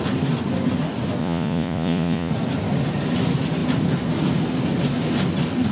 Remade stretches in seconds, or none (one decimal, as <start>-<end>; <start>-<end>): 1.2-2.3